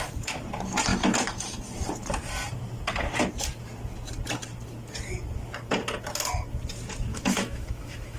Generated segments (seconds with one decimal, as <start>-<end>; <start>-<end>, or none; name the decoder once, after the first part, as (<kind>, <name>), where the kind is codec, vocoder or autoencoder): 7.1-8.2 (autoencoder, DAC-VAE)